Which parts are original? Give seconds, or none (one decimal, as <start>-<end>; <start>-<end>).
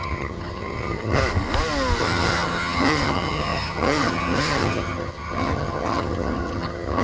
1.2-2.0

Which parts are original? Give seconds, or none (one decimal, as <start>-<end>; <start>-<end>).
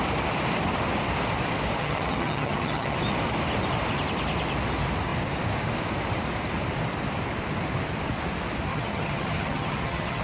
0.0-1.8; 3.0-8.7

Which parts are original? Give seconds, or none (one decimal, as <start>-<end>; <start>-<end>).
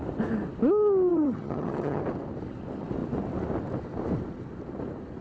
0.0-1.1; 2.0-5.2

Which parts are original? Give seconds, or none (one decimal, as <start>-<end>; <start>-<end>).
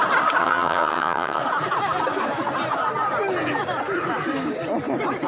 0.0-0.4; 1.4-5.3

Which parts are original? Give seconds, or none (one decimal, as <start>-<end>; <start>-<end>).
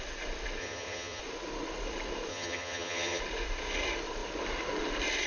0.0-0.6; 1.2-2.3; 3.2-5.3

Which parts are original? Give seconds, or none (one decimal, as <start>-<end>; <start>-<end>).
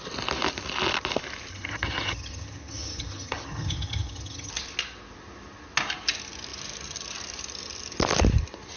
0.0-1.5; 4.5-8.8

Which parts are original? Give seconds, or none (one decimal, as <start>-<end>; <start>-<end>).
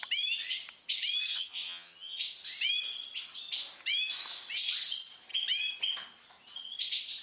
0.0-1.3; 2.2-7.2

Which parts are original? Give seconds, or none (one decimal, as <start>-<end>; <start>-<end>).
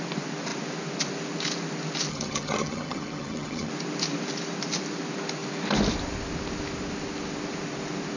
0.0-2.1; 3.7-8.2